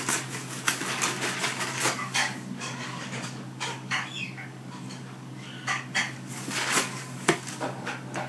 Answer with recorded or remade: remade